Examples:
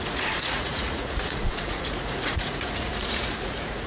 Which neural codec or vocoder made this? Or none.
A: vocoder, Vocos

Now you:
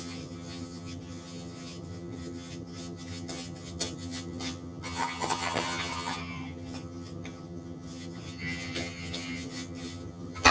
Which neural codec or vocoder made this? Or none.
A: vocoder, HiFi-GAN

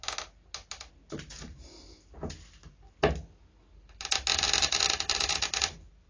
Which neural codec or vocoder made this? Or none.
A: none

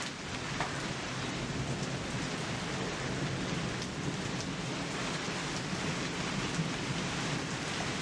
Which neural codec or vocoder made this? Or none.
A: none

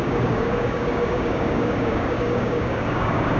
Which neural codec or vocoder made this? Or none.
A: codec, DAC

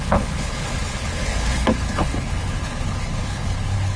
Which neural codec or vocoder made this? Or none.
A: codec, HILCodec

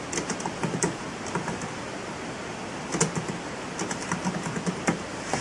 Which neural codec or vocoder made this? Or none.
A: none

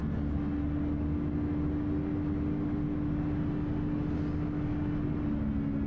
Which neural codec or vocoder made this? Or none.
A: none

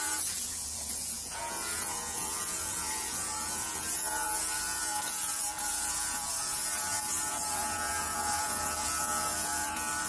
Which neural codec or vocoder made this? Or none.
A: vocoder, Vocos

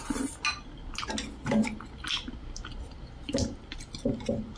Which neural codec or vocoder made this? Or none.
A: none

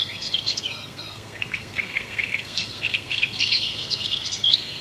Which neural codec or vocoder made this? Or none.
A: codec, SNAC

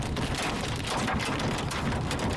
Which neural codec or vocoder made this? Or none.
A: none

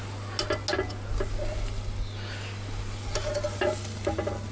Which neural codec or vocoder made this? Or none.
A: none